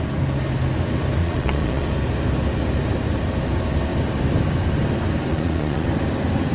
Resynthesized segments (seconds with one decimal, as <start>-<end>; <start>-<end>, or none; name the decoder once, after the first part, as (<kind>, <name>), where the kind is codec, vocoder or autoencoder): 1.2-1.9 (vocoder, Vocos); 5.3-5.9